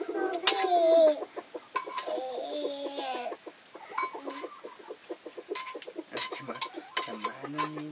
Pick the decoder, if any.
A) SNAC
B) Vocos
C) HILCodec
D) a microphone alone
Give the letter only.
D